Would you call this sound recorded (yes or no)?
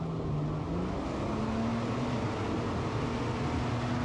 yes